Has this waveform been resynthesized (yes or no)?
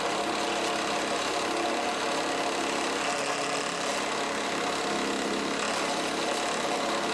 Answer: no